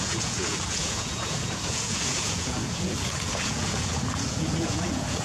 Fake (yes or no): yes